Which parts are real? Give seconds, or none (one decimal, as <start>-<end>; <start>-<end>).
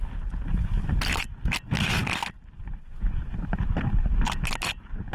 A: 0.0-5.1